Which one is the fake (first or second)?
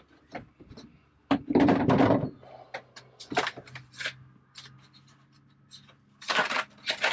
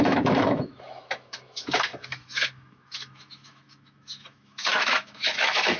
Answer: second